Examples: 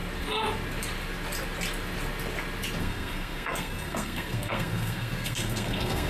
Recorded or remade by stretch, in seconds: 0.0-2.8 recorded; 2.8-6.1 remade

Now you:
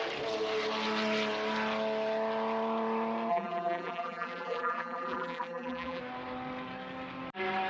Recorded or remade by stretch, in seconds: 0.0-3.3 recorded; 3.3-6.0 remade; 6.0-7.7 recorded

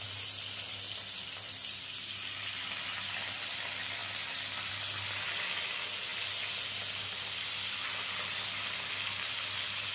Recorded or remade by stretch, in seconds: 0.0-9.9 recorded

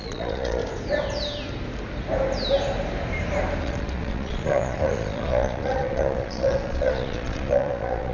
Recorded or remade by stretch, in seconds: 0.0-0.6 remade; 0.6-3.6 recorded; 3.6-8.1 remade